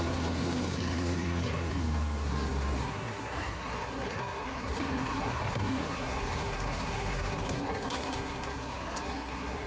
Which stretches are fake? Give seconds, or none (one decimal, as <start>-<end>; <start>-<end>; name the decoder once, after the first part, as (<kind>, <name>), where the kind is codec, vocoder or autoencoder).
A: 0.0-9.7 (codec, SNAC)

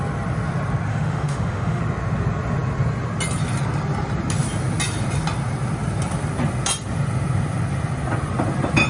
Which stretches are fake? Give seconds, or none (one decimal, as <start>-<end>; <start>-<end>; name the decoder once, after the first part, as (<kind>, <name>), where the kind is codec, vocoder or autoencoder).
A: 0.9-1.8 (autoencoder, DAC-VAE)

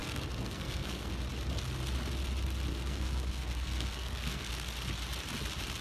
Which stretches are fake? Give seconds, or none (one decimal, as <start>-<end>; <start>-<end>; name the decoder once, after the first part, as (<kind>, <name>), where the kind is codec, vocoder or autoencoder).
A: 0.0-1.1 (codec, SNAC); 2.7-4.5

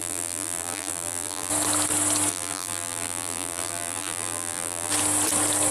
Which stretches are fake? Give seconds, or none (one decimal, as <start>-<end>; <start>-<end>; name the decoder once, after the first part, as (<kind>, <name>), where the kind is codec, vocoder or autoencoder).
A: 0.0-1.5 (vocoder, BigVGAN v2); 2.3-4.9

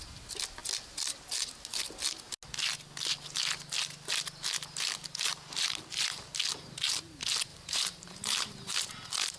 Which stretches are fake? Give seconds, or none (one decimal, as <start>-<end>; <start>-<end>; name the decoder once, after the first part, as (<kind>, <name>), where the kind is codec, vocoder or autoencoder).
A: 7.5-8.8 (vocoder, BigVGAN v2)

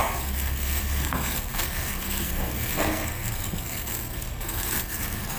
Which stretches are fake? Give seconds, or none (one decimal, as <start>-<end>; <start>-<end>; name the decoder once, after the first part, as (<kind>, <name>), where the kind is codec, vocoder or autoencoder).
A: 0.0-5.4 (codec, SNAC)